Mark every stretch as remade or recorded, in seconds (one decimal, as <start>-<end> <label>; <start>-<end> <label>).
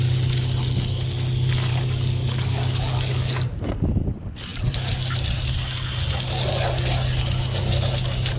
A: 0.0-1.7 recorded; 1.7-3.7 remade; 3.7-8.4 recorded